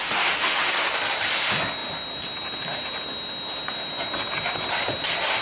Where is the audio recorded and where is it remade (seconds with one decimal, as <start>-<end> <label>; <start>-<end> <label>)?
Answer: 0.0-0.7 remade; 0.7-5.4 recorded